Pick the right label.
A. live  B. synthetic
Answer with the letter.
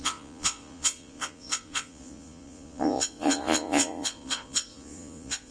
B